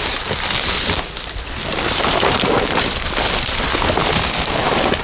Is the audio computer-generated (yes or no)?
no